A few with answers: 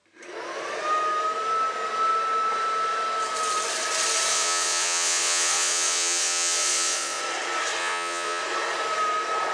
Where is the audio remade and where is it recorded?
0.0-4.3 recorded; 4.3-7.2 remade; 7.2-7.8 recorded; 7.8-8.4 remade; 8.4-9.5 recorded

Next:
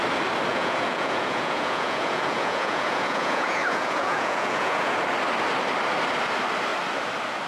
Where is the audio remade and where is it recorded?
0.0-0.5 recorded; 0.5-5.0 remade; 5.0-7.5 recorded

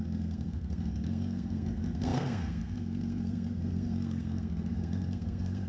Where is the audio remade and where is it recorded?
0.0-5.7 remade

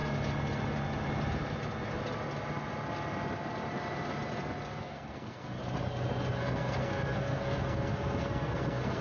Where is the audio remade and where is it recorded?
0.0-4.8 recorded; 4.8-5.6 remade; 5.6-6.4 recorded; 6.4-9.0 remade

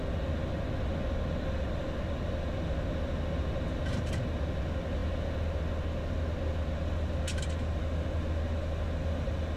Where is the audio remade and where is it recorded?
0.0-9.6 recorded

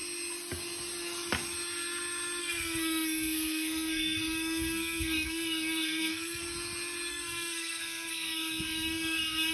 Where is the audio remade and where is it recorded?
0.0-2.4 recorded; 2.4-6.4 remade; 6.4-7.1 recorded; 7.1-9.5 remade